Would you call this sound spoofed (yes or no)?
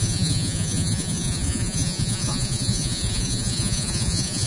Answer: yes